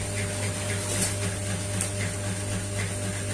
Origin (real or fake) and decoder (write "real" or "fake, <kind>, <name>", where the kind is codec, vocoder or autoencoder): real